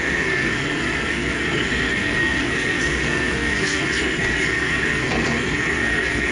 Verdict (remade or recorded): remade